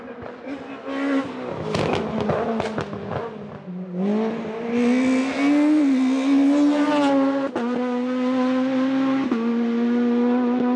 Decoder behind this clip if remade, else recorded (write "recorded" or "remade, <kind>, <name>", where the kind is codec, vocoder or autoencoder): recorded